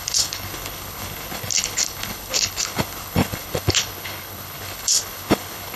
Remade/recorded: remade